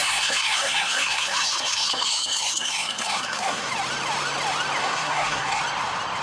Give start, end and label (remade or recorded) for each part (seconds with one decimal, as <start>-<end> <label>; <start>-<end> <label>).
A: 0.0-3.7 remade; 3.7-4.8 recorded; 4.8-5.6 remade; 5.6-6.2 recorded